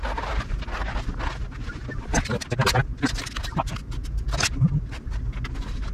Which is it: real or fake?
real